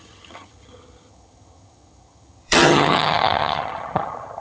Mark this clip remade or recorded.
remade